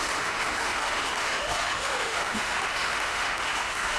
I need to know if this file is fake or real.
fake